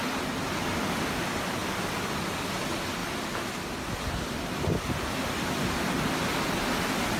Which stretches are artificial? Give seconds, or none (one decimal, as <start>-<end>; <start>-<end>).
none